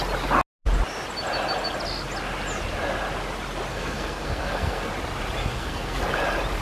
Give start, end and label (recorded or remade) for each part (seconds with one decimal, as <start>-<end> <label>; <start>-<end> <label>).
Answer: 0.0-3.7 recorded; 3.7-4.9 remade; 4.9-5.4 recorded; 5.4-6.0 remade; 6.0-6.6 recorded